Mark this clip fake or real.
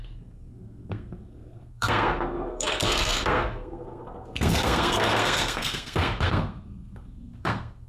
fake